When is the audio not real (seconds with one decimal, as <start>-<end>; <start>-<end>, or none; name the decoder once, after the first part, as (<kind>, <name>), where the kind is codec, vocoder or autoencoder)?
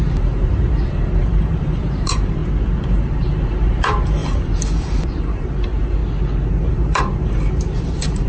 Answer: 0.0-2.4 (vocoder, BigVGAN v2); 2.9-6.0; 6.7-8.3